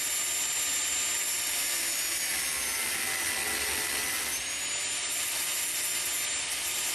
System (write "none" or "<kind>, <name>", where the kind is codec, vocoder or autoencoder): none